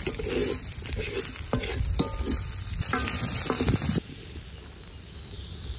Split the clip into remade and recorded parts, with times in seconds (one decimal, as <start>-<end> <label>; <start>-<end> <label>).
0.0-5.8 recorded